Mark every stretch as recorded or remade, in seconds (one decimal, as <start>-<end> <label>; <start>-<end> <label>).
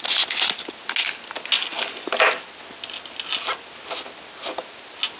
0.0-5.2 recorded